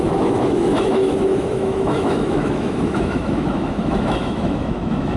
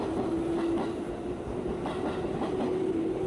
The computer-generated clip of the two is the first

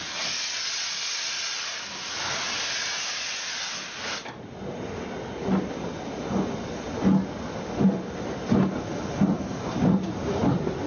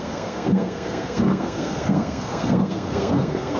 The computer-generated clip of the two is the second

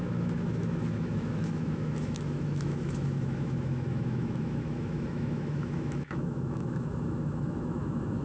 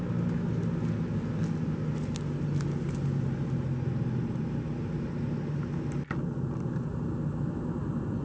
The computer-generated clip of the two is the first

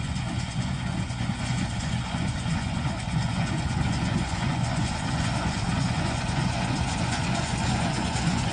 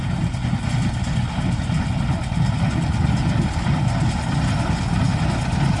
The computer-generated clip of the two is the first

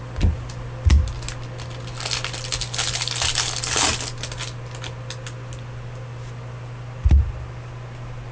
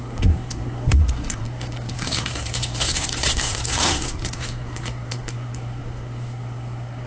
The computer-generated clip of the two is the second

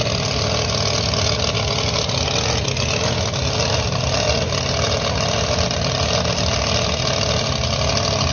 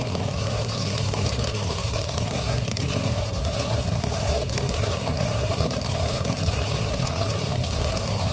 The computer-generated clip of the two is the second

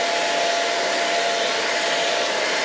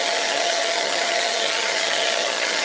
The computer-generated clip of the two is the second